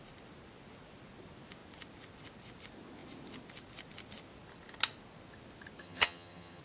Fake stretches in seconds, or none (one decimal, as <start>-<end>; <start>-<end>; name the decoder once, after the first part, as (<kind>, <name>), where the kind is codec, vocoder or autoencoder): 5.8-6.6 (vocoder, HiFi-GAN)